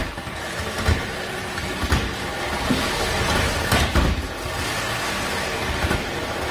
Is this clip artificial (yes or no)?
no